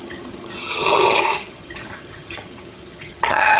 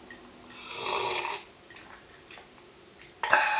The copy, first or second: first